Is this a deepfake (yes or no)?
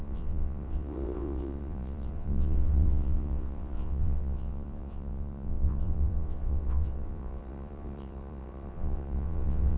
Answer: yes